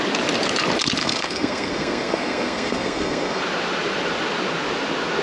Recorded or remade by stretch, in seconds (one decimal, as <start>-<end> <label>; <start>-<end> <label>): 0.0-1.0 recorded; 1.0-3.4 remade; 3.4-5.2 recorded